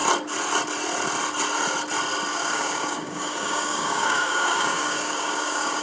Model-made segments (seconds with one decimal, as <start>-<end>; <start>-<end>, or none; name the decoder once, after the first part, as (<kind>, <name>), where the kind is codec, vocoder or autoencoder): 2.3-5.8 (codec, DAC)

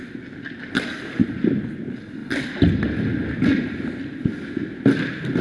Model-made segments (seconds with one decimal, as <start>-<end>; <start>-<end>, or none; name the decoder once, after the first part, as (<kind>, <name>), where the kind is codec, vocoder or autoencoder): 1.2-1.8 (vocoder, BigVGAN v2)